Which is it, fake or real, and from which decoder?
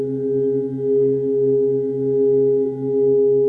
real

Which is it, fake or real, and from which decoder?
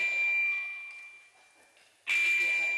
real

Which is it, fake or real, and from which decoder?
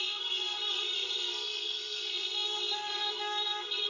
fake, codec, SNAC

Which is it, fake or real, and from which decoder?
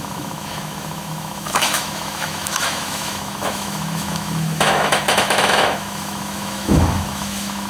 fake, autoencoder, DAC-VAE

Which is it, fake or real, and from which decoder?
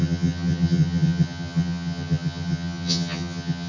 fake, vocoder, HiFi-GAN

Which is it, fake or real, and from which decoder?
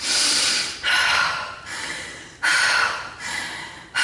real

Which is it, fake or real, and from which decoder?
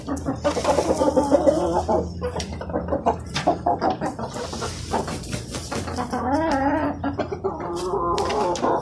real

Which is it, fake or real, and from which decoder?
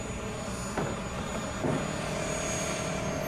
real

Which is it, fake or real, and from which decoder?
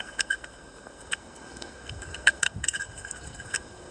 fake, codec, SNAC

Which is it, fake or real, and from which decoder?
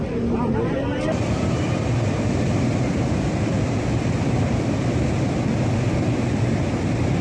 real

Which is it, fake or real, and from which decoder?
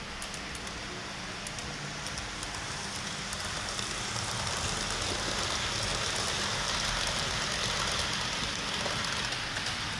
real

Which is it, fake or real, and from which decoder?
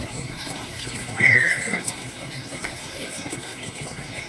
fake, codec, SNAC